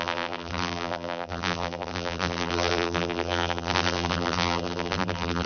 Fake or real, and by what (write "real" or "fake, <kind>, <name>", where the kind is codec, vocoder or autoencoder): fake, vocoder, BigVGAN v2